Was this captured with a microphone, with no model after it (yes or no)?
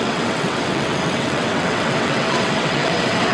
no